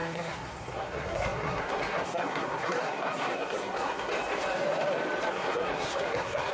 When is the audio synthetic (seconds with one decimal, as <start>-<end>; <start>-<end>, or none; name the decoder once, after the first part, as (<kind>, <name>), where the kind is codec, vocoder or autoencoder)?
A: 0.0-4.1 (codec, SNAC); 5.3-6.5